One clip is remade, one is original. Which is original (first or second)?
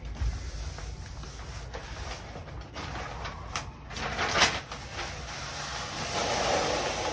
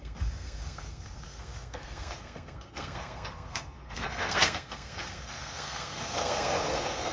first